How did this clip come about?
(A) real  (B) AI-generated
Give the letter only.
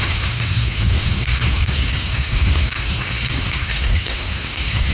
B